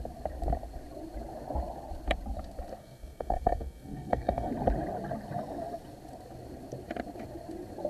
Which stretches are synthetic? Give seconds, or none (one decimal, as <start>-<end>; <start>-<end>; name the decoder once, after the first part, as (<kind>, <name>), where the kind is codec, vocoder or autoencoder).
2.8-4.5 (codec, SNAC)